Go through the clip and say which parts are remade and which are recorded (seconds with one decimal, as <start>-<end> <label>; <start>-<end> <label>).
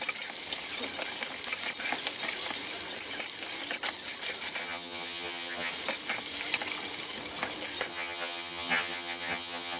0.0-4.6 recorded; 4.6-5.7 remade; 5.7-7.9 recorded; 7.9-9.8 remade